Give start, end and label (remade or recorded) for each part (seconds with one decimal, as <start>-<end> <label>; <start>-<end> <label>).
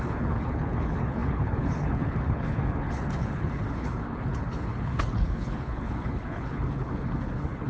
0.0-7.7 remade